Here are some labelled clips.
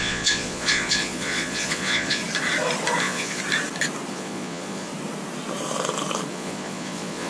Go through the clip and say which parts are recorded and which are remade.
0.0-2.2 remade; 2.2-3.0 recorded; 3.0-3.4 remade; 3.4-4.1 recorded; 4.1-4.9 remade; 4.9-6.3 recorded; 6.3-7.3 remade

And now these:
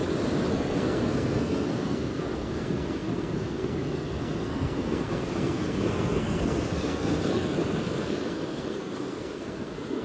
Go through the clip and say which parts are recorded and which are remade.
0.0-0.5 recorded; 0.5-10.0 remade

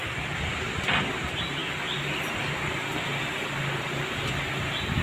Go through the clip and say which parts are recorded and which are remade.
0.0-5.0 recorded